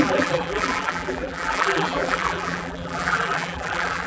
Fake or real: fake